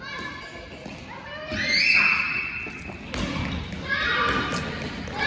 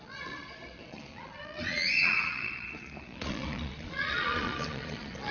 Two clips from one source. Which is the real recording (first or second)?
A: first